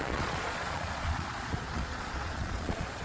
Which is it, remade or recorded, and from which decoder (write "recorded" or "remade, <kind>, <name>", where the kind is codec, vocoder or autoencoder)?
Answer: remade, vocoder, Vocos